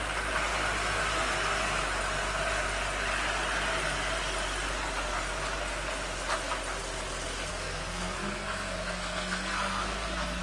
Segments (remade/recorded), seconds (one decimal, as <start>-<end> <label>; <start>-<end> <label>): 0.0-7.5 recorded; 7.5-10.4 remade